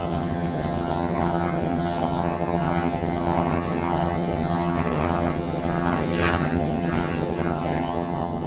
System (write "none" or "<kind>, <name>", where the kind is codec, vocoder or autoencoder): vocoder, HiFi-GAN